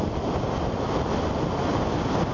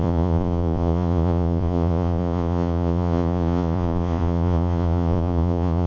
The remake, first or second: second